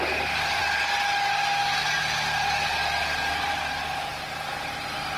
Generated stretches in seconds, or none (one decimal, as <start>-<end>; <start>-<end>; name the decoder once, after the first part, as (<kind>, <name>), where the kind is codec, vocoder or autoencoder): none